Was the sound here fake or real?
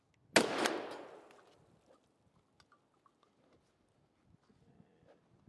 real